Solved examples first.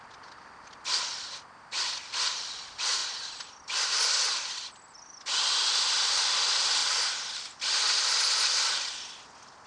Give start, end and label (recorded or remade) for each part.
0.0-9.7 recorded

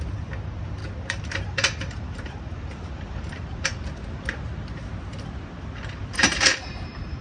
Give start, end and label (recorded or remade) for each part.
0.0-3.7 remade; 3.7-6.0 recorded; 6.0-7.2 remade